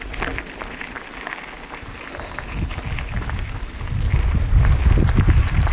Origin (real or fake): real